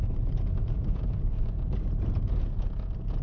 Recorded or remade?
remade